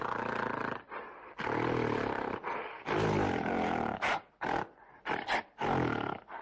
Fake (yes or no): no